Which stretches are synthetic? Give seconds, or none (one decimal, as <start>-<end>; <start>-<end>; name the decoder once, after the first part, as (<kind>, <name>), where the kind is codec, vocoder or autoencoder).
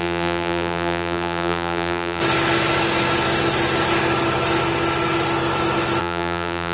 0.0-2.2 (vocoder, BigVGAN v2); 6.0-6.7